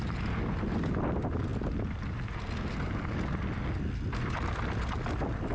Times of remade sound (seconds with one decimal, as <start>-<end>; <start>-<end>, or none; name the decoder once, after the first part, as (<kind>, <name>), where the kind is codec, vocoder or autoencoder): none